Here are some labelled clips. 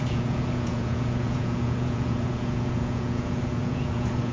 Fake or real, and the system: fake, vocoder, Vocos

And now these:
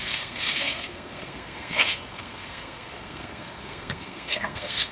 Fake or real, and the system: fake, codec, SNAC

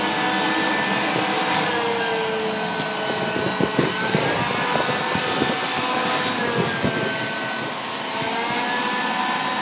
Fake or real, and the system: real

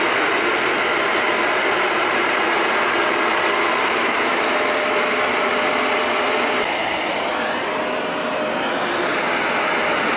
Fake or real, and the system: real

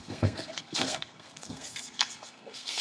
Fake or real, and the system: fake, codec, SNAC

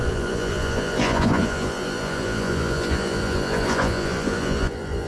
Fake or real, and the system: fake, vocoder, Vocos